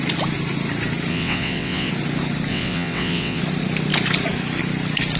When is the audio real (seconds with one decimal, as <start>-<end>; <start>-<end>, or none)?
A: 0.0-1.1; 1.9-2.5; 3.4-5.2